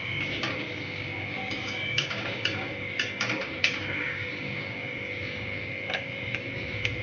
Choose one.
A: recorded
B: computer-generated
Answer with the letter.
B